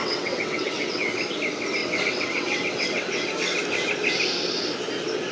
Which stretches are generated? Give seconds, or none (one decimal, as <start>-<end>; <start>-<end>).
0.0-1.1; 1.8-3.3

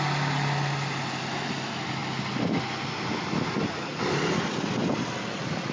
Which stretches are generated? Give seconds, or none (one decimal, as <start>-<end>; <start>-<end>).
none

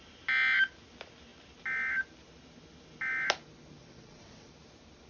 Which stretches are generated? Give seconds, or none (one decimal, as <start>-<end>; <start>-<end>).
3.8-4.5

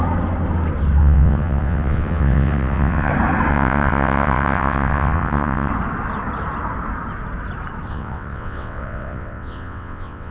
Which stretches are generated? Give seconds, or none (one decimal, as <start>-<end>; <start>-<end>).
1.0-3.1; 3.5-5.7; 7.9-10.3

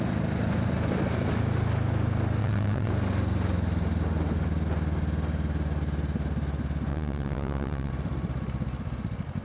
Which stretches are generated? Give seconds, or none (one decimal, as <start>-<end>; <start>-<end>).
2.4-2.9; 6.9-7.9